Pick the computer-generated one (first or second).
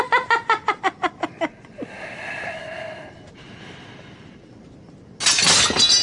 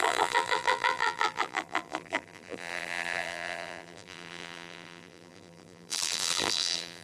second